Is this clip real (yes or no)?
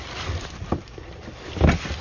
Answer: yes